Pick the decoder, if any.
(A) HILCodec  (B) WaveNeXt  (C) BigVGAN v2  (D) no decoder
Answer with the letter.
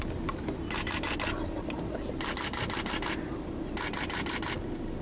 D